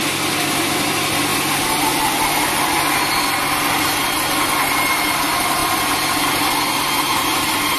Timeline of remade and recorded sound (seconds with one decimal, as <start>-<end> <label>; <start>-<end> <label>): 0.0-7.8 recorded